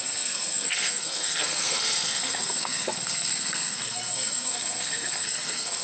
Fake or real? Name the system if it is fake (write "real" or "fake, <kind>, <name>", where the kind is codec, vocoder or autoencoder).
fake, codec, SNAC